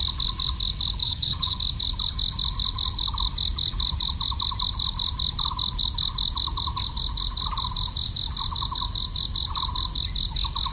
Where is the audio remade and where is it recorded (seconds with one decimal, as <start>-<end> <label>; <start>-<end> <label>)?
0.0-1.0 recorded; 1.0-1.6 remade; 1.6-10.7 recorded